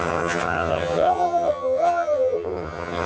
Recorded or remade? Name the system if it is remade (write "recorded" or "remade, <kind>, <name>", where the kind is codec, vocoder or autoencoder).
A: remade, vocoder, HiFi-GAN